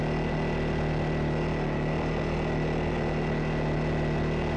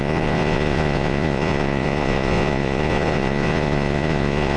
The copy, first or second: second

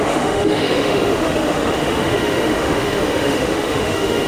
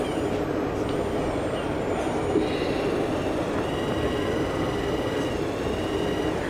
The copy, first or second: first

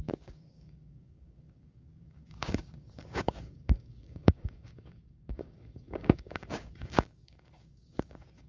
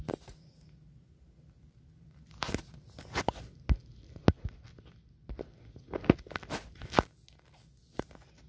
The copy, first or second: first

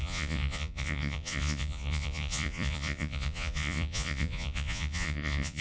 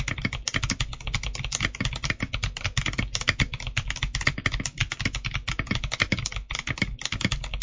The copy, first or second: first